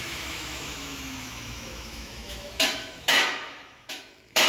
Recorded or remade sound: remade